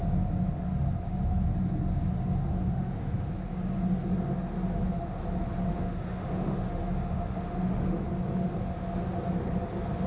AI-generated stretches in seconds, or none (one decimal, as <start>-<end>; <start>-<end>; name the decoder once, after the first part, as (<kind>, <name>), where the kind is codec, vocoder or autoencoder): 2.5-3.3 (autoencoder, DAC-VAE); 5.7-8.1